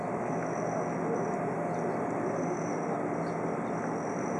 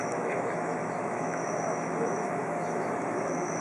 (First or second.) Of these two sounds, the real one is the first